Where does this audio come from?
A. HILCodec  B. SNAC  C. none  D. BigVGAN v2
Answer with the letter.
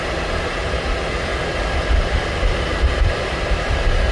C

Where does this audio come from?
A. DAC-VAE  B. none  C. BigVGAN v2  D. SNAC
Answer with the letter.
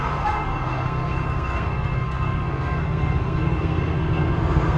D